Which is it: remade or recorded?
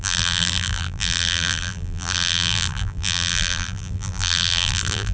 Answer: remade